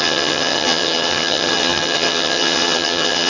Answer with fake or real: fake